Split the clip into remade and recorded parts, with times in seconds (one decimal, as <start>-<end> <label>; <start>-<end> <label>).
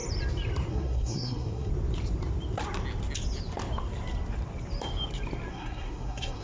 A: 0.0-0.7 recorded; 0.7-1.7 remade; 1.7-5.5 recorded; 5.5-6.4 remade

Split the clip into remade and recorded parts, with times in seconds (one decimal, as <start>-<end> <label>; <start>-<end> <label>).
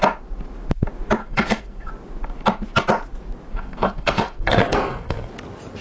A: 0.0-1.2 recorded; 1.2-1.9 remade; 1.9-3.5 recorded; 3.5-5.3 remade; 5.3-5.8 recorded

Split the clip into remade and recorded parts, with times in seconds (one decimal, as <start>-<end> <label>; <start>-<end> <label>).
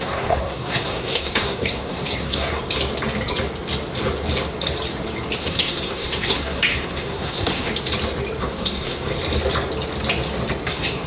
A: 0.0-2.6 remade; 2.6-5.4 recorded; 5.4-7.7 remade; 7.7-8.4 recorded; 8.4-9.1 remade; 9.1-10.7 recorded; 10.7-11.1 remade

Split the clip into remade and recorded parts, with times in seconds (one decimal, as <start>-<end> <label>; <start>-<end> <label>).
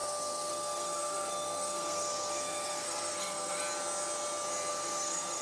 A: 0.0-3.6 remade; 3.6-4.7 recorded; 4.7-5.4 remade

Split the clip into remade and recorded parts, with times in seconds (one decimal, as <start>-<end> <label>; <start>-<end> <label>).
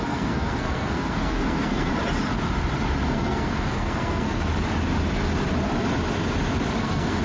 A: 0.0-1.9 remade; 1.9-3.1 recorded; 3.1-4.5 remade; 4.5-6.8 recorded; 6.8-7.2 remade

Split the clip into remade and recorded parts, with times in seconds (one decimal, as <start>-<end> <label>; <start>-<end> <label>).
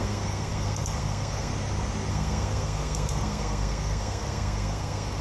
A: 0.0-1.5 remade; 1.5-2.1 recorded; 2.1-5.2 remade